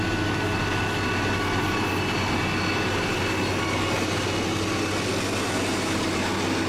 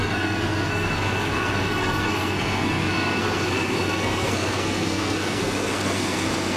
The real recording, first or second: first